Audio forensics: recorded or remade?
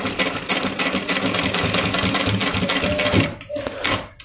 recorded